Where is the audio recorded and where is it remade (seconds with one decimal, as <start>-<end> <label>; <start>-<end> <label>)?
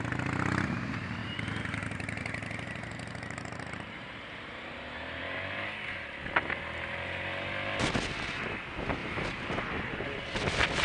0.0-1.2 recorded; 1.2-5.2 remade; 5.2-9.0 recorded; 9.0-9.6 remade; 9.6-10.8 recorded